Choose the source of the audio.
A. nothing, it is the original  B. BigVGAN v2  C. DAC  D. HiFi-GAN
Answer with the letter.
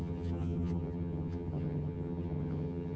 D